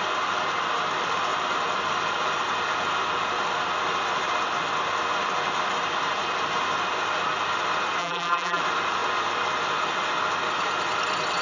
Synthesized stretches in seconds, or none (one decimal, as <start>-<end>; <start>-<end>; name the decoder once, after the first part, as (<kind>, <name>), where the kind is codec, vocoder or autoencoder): 8.0-8.6 (vocoder, BigVGAN v2)